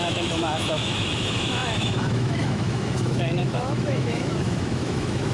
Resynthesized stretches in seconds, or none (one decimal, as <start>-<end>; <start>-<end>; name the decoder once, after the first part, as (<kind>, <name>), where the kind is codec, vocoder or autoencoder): 0.0-5.3 (autoencoder, DAC-VAE)